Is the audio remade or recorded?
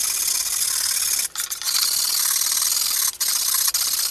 recorded